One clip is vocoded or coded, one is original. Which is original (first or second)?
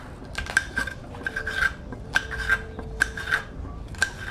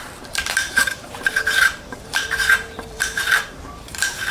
first